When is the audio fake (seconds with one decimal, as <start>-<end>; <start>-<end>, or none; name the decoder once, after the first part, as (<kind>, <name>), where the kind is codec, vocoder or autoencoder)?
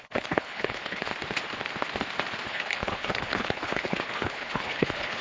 0.0-1.1 (codec, HILCodec); 2.5-5.2